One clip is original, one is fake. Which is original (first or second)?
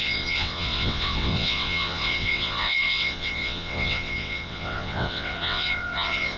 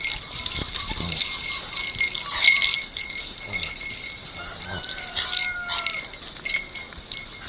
second